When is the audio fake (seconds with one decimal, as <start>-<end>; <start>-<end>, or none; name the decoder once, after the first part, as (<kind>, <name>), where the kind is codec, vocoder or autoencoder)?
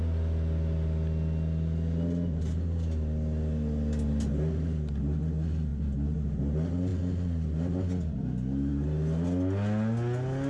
none